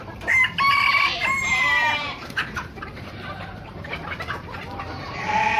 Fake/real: fake